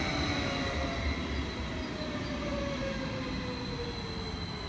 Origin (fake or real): real